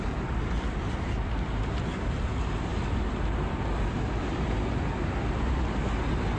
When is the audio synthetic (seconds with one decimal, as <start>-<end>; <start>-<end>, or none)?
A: none